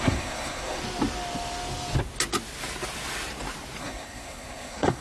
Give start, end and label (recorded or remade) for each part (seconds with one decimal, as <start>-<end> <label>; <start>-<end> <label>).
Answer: 0.0-0.8 remade; 0.8-3.8 recorded; 3.8-5.0 remade

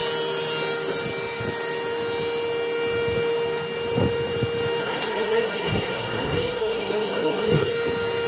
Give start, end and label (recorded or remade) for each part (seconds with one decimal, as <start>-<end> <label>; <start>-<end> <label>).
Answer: 0.0-4.8 recorded; 4.8-7.7 remade; 7.7-8.3 recorded

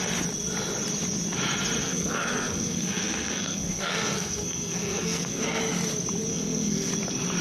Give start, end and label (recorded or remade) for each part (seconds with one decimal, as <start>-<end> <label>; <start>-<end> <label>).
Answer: 0.0-1.8 recorded; 1.8-5.6 remade; 5.6-6.3 recorded; 6.3-6.9 remade; 6.9-7.4 recorded

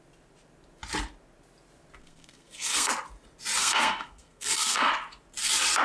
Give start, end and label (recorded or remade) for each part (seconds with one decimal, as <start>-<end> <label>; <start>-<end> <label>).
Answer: 0.0-2.0 recorded; 2.0-2.9 remade; 2.9-3.6 recorded; 3.6-4.9 remade; 4.9-5.8 recorded

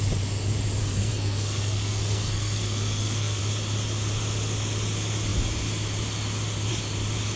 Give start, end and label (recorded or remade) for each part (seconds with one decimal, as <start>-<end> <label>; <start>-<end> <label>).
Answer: 0.0-0.8 recorded; 0.8-3.4 remade; 3.4-7.4 recorded

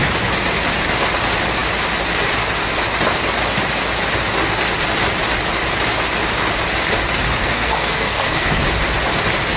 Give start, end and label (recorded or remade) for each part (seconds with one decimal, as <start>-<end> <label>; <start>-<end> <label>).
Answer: 0.0-7.4 recorded; 7.4-8.6 remade; 8.6-9.6 recorded

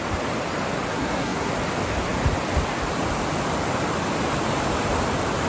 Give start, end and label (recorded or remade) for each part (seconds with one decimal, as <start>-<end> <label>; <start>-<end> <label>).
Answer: 0.0-0.9 recorded; 0.9-1.5 remade; 1.5-5.5 recorded